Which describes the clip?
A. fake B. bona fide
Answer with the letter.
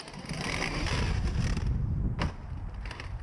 B